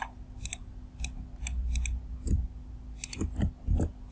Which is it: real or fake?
real